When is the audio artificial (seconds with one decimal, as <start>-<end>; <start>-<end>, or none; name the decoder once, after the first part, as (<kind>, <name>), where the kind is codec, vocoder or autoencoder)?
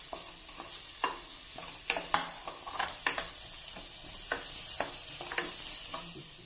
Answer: none